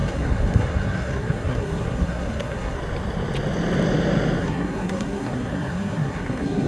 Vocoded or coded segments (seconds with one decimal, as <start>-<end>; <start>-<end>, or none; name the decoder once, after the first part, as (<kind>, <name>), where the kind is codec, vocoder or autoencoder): 0.0-2.8 (codec, SNAC); 4.4-6.7